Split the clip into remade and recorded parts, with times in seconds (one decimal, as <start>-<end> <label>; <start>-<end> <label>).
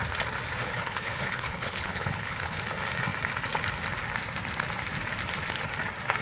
0.0-0.6 recorded; 0.6-2.6 remade; 2.6-6.2 recorded